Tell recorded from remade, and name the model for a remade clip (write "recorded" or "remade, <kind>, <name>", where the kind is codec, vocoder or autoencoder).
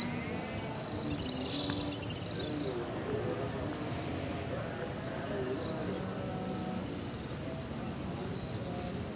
recorded